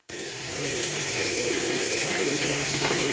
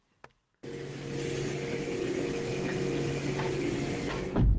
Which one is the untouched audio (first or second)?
second